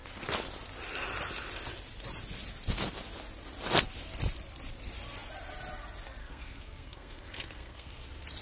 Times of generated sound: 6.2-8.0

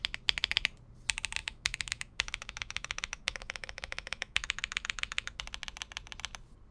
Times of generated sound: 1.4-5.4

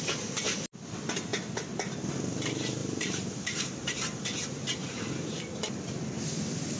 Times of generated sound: 2.8-4.2; 4.8-5.5

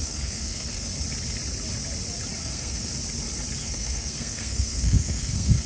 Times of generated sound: 0.0-0.9; 2.4-2.9; 3.6-5.7

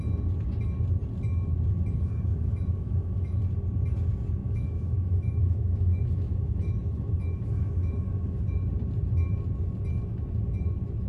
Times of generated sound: 2.3-3.4; 4.4-8.4